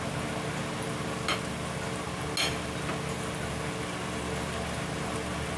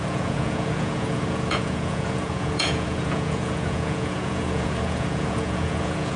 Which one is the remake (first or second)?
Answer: second